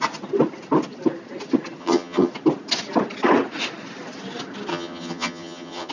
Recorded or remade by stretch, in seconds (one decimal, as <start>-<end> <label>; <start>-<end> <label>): 0.0-1.8 recorded; 1.8-2.3 remade; 2.3-4.7 recorded; 4.7-5.9 remade